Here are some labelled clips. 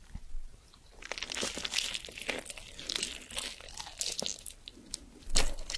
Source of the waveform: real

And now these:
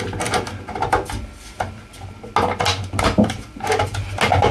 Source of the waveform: real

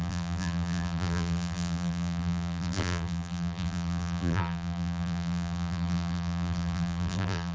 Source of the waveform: fake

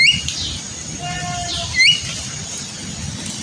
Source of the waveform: real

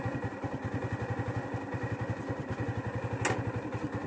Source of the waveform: real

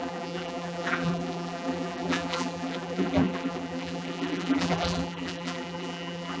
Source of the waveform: fake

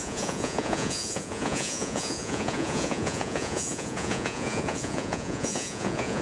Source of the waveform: fake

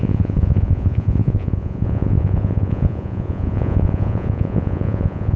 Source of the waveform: fake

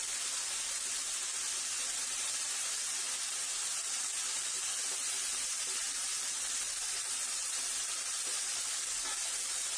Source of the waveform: real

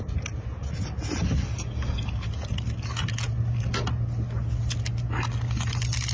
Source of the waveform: real